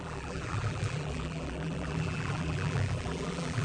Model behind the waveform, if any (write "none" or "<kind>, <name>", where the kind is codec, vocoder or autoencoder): vocoder, BigVGAN v2